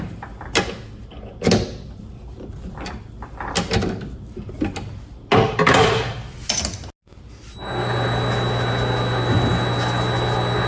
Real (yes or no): yes